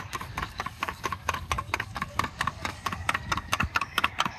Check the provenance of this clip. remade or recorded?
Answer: remade